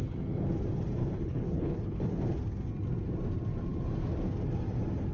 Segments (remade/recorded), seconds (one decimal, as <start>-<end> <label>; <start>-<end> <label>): 0.0-1.0 recorded; 1.0-2.2 remade; 2.2-5.1 recorded